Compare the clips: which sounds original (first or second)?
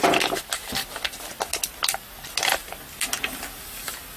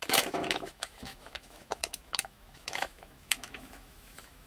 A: first